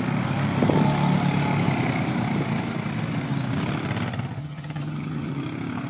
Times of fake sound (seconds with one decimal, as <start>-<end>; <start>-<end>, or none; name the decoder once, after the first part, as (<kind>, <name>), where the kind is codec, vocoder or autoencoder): 4.4-5.4 (vocoder, HiFi-GAN)